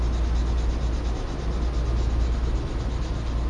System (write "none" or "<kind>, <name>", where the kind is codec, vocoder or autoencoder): none